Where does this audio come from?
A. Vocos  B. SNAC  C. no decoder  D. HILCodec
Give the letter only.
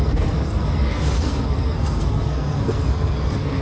B